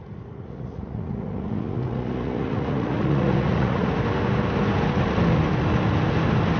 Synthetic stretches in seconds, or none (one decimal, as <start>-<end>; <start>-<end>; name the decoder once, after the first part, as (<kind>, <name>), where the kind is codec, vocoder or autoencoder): 0.0-3.9 (vocoder, Vocos)